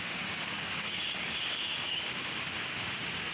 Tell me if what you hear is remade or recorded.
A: remade